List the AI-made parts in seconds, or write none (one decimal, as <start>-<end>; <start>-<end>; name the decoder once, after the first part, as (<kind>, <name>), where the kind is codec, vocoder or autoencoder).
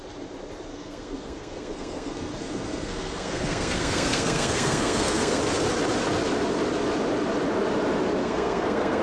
0.7-5.4 (codec, SNAC); 8.2-9.0